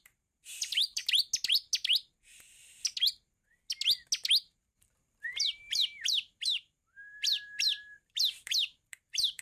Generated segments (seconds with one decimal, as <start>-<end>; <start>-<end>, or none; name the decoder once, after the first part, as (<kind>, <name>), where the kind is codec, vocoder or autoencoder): 0.0-1.0 (vocoder, BigVGAN v2); 4.6-9.4